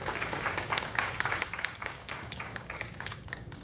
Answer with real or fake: fake